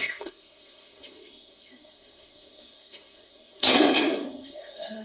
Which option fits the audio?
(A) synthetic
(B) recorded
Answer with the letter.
A